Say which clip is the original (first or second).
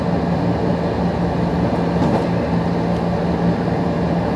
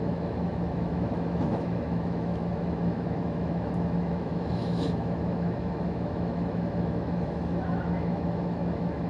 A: first